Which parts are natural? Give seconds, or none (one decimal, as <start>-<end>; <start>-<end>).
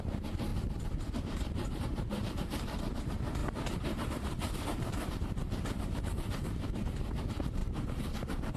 none